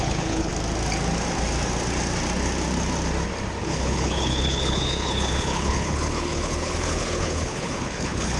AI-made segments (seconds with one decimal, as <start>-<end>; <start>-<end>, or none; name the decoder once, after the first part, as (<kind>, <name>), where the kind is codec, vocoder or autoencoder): 0.0-0.5 (codec, HILCodec); 3.6-8.4